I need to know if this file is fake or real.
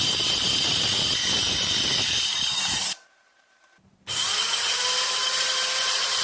fake